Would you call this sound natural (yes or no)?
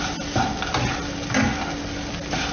yes